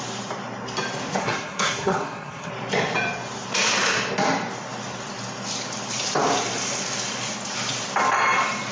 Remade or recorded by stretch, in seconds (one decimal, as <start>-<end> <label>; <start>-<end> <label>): 0.0-1.2 recorded; 1.2-2.5 remade; 2.5-8.7 recorded